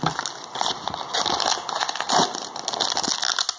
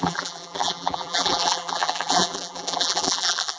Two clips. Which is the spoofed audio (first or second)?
second